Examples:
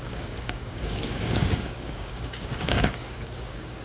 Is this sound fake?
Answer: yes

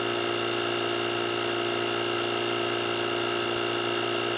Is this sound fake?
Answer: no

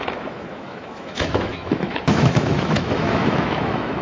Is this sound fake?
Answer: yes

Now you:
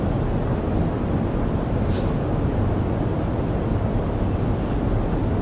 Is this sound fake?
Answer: no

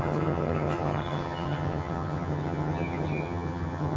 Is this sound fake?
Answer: yes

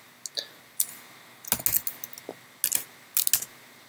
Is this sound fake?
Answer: no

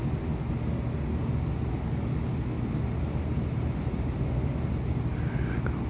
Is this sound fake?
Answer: no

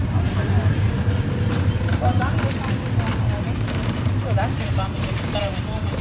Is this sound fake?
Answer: yes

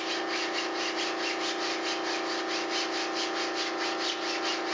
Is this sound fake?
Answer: no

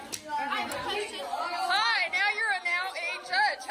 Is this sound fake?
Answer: no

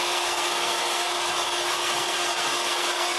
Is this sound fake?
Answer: yes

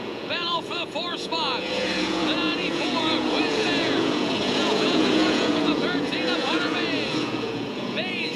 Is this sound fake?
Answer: yes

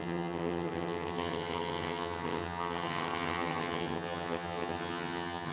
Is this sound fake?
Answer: yes